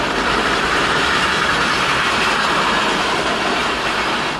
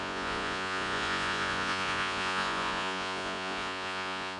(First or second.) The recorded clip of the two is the first